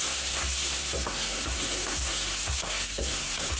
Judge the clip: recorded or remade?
remade